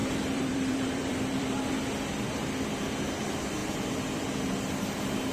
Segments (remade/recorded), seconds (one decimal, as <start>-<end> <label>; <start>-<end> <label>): 0.0-1.6 remade; 1.6-3.6 recorded; 3.6-4.4 remade; 4.4-5.3 recorded